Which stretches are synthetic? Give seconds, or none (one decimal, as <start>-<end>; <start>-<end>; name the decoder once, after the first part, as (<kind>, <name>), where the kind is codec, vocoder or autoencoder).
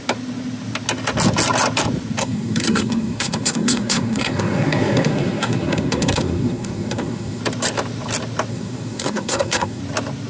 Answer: 2.2-7.4 (codec, SNAC); 8.5-9.8